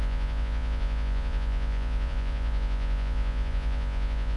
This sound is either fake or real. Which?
fake